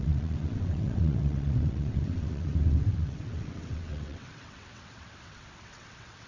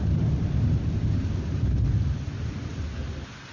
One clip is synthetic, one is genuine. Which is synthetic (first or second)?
first